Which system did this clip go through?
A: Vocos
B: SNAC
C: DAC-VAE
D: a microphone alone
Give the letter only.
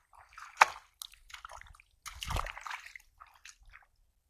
D